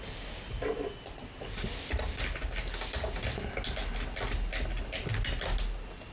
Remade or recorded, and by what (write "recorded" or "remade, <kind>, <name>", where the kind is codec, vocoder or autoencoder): recorded